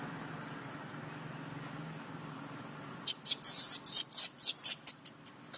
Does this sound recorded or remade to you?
recorded